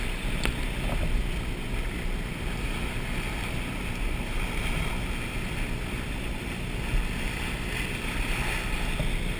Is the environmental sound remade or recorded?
recorded